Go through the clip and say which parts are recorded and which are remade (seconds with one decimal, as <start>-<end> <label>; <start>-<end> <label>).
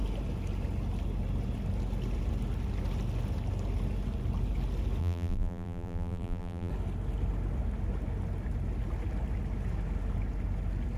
0.0-5.0 recorded; 5.0-6.7 remade; 6.7-11.0 recorded